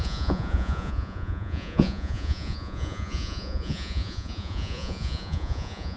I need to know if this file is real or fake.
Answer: fake